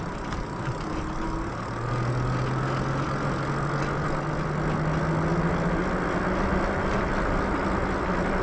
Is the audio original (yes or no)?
yes